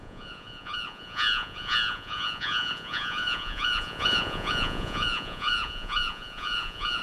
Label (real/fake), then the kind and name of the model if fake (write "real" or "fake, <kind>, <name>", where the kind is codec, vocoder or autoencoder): fake, vocoder, Vocos